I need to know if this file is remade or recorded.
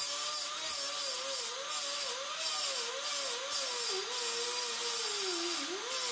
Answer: recorded